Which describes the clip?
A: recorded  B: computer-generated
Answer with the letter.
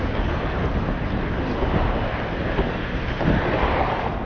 A